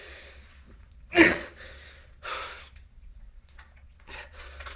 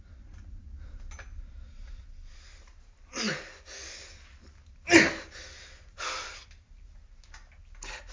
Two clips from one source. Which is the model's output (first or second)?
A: first